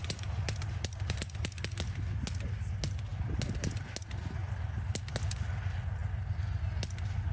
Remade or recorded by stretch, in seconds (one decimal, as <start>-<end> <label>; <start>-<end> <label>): 0.0-1.6 remade; 1.6-7.3 recorded